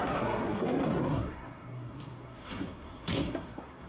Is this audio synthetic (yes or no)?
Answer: yes